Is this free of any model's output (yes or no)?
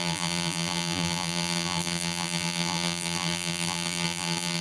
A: no